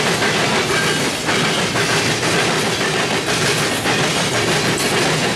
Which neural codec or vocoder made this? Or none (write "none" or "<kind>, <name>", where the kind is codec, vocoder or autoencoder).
none